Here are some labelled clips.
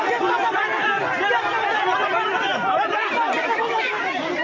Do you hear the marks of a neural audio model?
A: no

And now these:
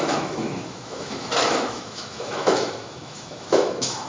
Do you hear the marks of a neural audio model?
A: yes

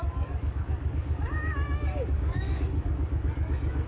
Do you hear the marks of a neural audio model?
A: yes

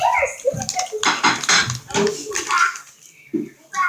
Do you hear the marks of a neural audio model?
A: no